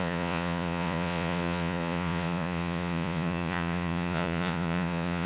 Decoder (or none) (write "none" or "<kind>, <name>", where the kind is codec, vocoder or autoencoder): vocoder, Vocos